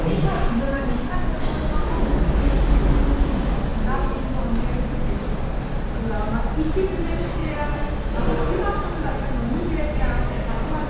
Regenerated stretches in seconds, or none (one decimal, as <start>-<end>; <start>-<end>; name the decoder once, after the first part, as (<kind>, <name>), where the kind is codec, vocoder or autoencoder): none